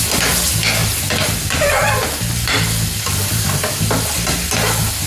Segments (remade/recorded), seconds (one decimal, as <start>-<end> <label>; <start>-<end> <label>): 0.0-5.1 recorded